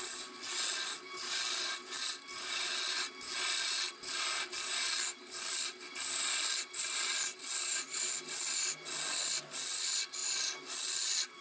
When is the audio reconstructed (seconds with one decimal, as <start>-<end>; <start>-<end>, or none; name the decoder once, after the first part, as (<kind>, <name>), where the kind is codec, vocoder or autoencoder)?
none